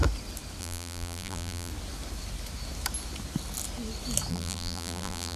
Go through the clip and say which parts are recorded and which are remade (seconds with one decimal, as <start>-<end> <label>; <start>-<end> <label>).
0.0-0.6 recorded; 0.6-1.7 remade; 1.7-4.3 recorded; 4.3-5.4 remade